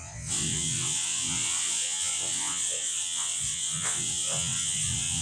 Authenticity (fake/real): fake